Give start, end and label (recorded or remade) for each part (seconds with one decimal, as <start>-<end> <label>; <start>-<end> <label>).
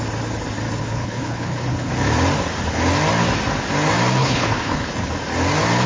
0.0-0.8 recorded; 0.8-1.9 remade; 1.9-4.2 recorded; 4.2-5.1 remade; 5.1-5.9 recorded